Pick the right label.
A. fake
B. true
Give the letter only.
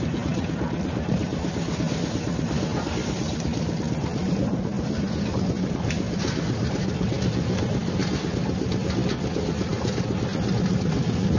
B